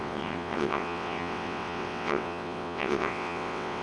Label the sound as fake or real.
fake